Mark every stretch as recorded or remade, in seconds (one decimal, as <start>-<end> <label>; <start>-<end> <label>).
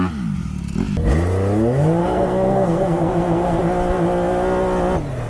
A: 0.0-2.0 recorded; 2.0-3.6 remade; 3.6-5.3 recorded